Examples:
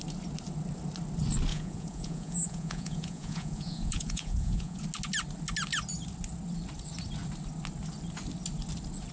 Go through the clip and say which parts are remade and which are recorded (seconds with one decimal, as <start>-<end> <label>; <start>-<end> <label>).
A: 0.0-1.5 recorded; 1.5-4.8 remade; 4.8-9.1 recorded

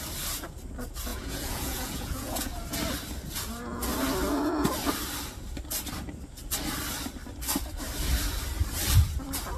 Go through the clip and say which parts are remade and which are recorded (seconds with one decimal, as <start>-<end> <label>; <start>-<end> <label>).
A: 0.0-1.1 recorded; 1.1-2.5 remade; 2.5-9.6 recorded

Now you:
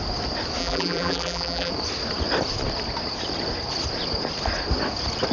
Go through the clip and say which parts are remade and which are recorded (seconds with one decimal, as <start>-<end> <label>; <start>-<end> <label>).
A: 0.0-0.6 recorded; 0.6-1.7 remade; 1.7-5.3 recorded

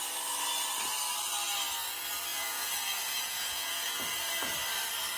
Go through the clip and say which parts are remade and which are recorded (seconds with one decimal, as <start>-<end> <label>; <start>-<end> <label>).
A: 0.0-2.3 recorded; 2.3-4.3 remade; 4.3-5.2 recorded

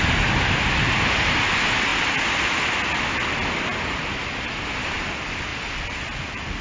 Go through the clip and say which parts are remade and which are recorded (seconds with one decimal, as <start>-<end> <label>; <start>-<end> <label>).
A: 0.0-5.5 recorded; 5.5-6.6 remade